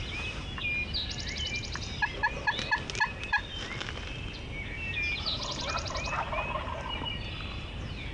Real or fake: real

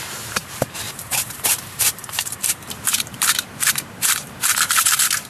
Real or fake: fake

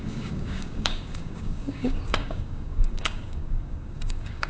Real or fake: fake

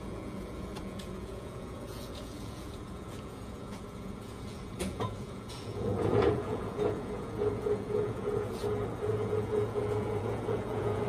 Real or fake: fake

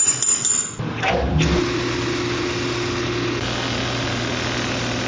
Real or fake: real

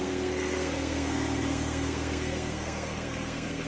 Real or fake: fake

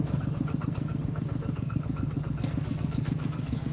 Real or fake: fake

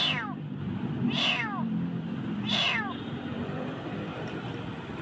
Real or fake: fake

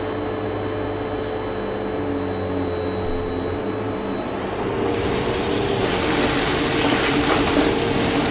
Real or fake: real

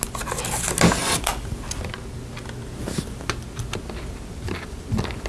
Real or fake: real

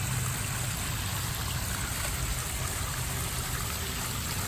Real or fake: real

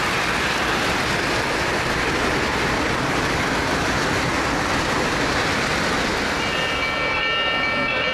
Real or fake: real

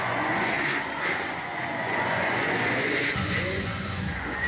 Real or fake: fake